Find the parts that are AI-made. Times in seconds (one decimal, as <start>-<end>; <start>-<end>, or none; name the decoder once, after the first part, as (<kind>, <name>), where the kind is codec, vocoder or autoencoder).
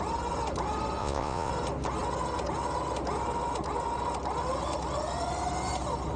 1.0-1.5 (vocoder, Vocos)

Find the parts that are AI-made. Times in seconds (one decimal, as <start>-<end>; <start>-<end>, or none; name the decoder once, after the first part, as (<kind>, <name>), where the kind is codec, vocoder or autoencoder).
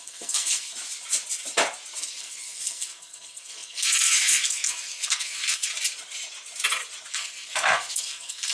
0.0-0.7 (codec, SNAC); 2.0-5.7; 7.1-8.5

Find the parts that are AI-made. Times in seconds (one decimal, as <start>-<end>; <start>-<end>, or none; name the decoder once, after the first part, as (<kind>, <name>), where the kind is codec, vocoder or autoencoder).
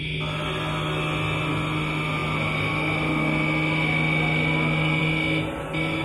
none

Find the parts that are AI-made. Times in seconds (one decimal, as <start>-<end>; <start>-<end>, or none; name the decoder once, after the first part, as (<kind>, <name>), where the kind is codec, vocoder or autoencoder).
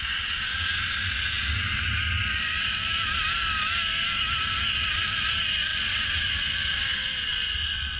none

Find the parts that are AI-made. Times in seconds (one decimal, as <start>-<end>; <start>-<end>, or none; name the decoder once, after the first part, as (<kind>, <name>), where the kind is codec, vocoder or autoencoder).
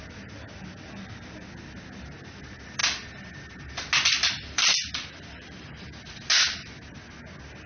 none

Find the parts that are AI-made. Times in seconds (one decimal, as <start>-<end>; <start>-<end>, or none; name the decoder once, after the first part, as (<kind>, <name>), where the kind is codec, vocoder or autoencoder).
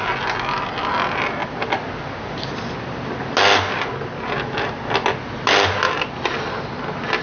none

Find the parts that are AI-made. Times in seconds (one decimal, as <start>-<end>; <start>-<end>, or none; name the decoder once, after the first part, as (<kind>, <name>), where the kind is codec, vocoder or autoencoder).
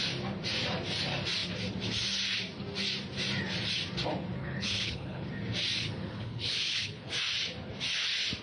4.4-5.3 (codec, HILCodec); 5.8-7.1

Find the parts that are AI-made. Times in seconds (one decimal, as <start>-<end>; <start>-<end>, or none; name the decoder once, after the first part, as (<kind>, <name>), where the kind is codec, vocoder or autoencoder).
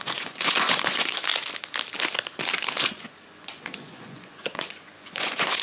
0.0-1.3 (vocoder, Vocos); 2.9-5.6